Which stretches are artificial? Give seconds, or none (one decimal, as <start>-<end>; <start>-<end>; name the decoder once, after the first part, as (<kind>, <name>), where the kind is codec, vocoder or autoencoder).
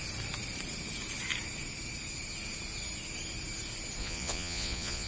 4.0-5.1 (vocoder, Vocos)